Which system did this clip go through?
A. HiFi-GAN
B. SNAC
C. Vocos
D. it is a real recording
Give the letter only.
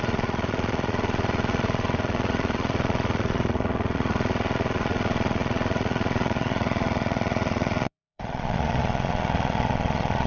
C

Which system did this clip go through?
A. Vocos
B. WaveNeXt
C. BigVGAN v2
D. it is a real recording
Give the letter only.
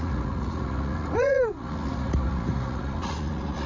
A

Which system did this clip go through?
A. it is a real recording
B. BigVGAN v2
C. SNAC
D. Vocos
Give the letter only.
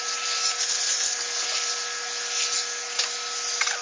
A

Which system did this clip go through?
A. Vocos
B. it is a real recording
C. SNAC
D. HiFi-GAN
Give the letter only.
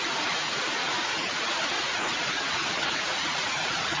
A